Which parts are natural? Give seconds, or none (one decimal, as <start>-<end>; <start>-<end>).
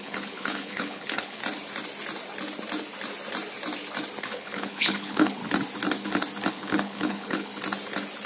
1.4-4.2; 5.4-6.5; 7.5-8.3